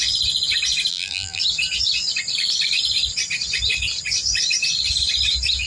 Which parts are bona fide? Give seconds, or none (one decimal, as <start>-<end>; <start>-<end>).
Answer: 0.0-0.9; 1.4-5.7